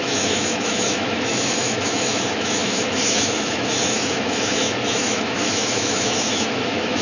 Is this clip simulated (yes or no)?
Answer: yes